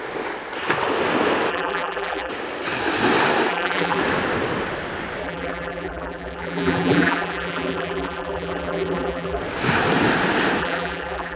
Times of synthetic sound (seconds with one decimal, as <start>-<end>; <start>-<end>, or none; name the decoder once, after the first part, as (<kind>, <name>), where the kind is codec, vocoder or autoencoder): 1.5-2.3 (vocoder, BigVGAN v2); 3.5-4.0; 5.2-9.4; 10.6-11.4